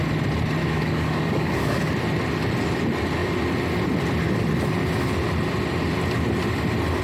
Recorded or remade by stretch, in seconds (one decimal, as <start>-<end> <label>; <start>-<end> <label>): 0.0-0.6 recorded; 0.6-1.8 remade; 1.8-7.0 recorded